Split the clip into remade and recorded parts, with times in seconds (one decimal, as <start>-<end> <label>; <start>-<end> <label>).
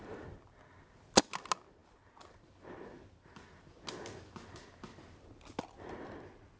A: 0.0-6.6 recorded